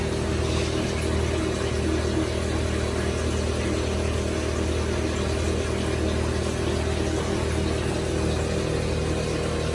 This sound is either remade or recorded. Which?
recorded